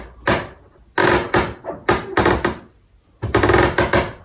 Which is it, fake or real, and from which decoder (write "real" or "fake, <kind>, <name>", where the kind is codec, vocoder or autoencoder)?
real